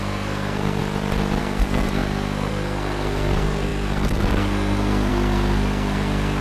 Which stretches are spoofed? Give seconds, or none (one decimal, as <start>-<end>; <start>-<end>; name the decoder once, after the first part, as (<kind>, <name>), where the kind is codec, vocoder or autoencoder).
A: 0.0-0.8 (codec, SNAC); 1.4-6.4